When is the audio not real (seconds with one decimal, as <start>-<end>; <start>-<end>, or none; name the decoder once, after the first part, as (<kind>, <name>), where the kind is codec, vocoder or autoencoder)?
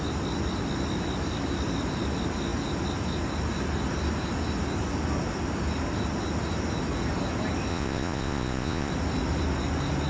7.7-8.9 (vocoder, Vocos)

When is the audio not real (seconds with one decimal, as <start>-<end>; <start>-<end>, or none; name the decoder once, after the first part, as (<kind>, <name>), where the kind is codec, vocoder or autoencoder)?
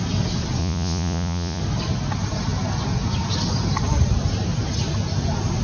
0.6-1.6 (vocoder, Vocos)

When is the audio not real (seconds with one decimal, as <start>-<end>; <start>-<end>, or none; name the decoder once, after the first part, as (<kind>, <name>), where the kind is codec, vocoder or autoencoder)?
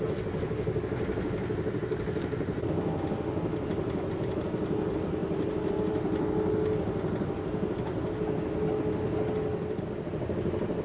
none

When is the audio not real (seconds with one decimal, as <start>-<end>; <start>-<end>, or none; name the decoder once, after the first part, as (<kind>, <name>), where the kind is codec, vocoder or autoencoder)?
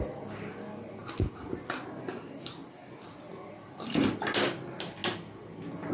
none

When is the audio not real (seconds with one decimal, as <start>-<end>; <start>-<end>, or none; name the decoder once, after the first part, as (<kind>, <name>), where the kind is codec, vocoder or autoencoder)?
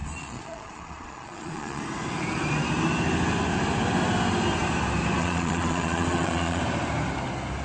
0.0-1.8 (vocoder, Vocos); 5.2-6.6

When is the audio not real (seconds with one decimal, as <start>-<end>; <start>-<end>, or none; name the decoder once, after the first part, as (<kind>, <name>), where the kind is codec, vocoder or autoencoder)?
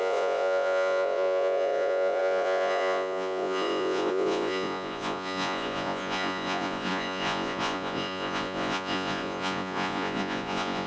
0.0-10.9 (vocoder, Vocos)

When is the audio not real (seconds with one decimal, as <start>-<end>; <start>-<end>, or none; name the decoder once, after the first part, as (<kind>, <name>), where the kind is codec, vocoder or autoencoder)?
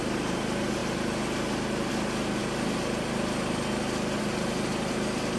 none